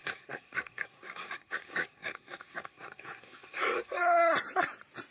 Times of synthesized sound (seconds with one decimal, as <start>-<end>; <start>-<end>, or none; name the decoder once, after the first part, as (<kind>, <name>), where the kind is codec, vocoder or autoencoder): 0.0-4.0 (codec, SNAC)